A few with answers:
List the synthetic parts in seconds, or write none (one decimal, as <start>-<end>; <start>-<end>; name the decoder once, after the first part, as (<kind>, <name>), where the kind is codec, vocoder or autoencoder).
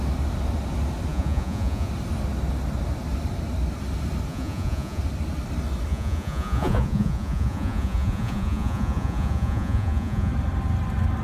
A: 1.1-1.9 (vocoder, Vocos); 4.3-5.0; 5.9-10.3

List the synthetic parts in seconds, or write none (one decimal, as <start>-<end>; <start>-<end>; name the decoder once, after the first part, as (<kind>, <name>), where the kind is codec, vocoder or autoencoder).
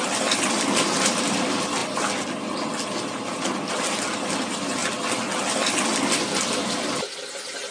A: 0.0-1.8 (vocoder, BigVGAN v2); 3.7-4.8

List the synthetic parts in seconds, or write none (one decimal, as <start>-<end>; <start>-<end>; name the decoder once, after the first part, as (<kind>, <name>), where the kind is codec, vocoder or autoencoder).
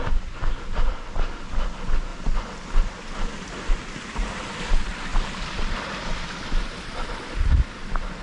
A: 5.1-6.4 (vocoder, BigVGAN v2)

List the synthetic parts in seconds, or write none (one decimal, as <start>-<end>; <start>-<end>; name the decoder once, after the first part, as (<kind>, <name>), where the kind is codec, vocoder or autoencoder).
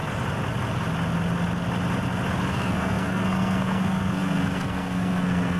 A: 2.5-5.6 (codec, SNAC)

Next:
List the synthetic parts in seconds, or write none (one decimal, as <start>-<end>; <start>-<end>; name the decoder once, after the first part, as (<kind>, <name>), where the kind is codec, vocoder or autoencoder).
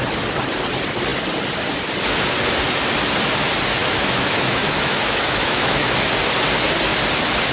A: 3.8-6.1 (autoencoder, DAC-VAE)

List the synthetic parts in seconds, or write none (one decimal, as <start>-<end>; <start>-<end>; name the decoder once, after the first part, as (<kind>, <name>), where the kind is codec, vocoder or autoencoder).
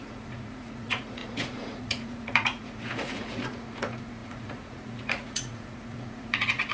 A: 0.0-6.7 (vocoder, Vocos)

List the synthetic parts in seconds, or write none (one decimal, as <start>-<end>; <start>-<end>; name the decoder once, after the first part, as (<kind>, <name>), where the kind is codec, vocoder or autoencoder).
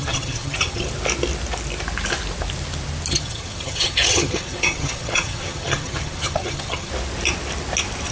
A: 0.0-0.9 (vocoder, HiFi-GAN); 3.1-6.9